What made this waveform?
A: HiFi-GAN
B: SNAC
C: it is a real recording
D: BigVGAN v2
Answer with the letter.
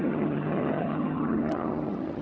A